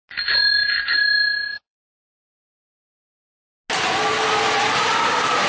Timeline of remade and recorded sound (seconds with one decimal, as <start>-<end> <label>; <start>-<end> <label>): 0.0-0.6 recorded; 0.6-2.0 remade; 2.0-5.5 recorded

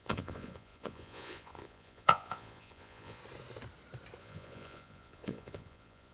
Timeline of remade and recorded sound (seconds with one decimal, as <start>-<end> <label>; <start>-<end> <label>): 0.0-3.2 remade; 3.2-4.2 recorded; 4.2-6.1 remade